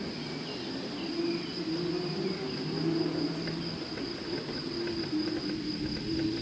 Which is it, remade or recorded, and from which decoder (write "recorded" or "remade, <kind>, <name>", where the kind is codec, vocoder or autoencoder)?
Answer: recorded